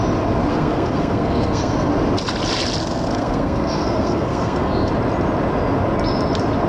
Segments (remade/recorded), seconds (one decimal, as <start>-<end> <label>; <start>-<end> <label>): 0.0-0.5 recorded; 0.5-1.9 remade; 1.9-2.8 recorded; 2.8-4.9 remade; 4.9-6.7 recorded